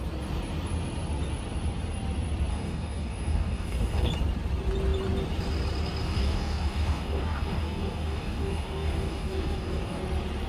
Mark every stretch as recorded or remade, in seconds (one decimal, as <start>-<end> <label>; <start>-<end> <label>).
0.0-2.5 recorded; 2.5-4.1 remade; 4.1-6.0 recorded; 6.0-10.0 remade; 10.0-10.5 recorded